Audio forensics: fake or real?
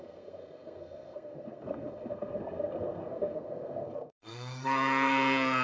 fake